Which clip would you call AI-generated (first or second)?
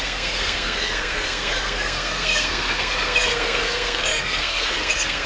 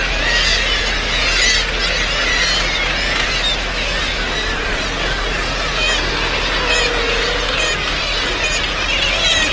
first